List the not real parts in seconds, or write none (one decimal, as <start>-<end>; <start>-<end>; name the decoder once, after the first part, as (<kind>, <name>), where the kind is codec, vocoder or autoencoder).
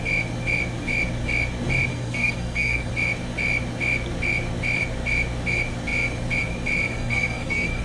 1.9-2.9 (codec, SNAC); 6.9-7.8